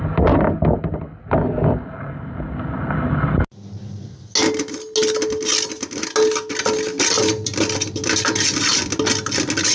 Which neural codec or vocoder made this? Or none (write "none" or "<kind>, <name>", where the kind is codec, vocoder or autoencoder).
none